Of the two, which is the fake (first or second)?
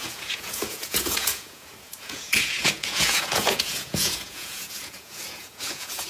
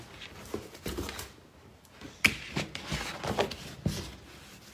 first